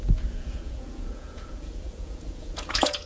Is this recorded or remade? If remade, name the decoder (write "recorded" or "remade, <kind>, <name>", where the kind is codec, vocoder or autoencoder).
remade, vocoder, Vocos